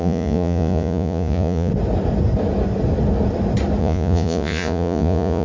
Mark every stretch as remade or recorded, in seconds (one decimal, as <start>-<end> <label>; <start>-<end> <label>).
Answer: 0.0-1.7 remade; 1.7-3.8 recorded; 3.8-5.4 remade